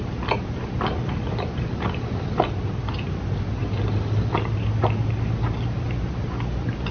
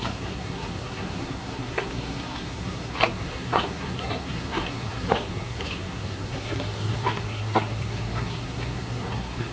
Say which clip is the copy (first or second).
second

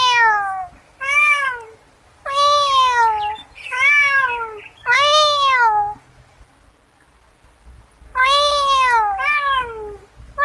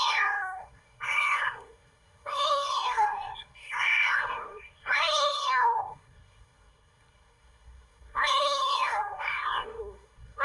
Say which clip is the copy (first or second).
second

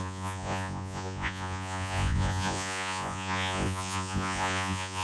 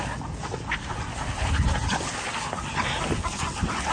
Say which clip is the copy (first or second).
first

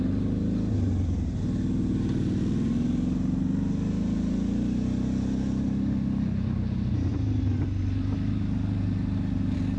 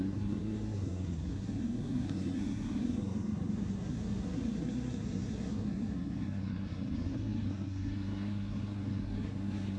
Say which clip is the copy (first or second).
second